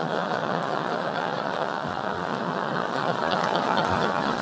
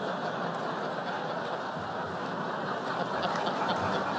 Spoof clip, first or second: first